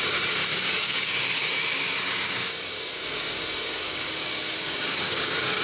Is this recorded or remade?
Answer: remade